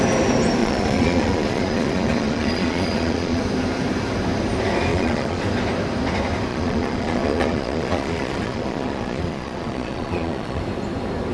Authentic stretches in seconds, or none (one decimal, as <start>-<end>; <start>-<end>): 0.0-0.6; 3.4-4.9; 5.4-6.5; 10.6-11.3